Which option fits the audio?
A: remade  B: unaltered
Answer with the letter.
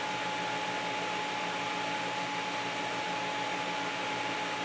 B